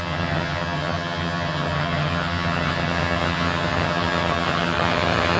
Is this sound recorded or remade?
remade